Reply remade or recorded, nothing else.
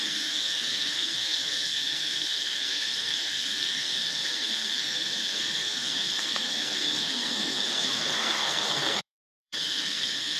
remade